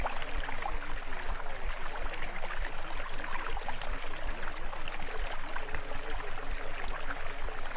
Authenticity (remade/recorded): recorded